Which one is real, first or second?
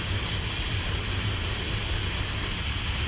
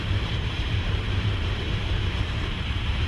first